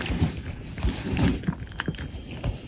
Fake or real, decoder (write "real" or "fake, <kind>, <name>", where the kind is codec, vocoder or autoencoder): real